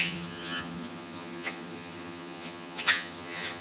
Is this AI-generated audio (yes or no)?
yes